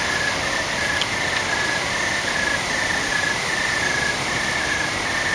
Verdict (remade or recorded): recorded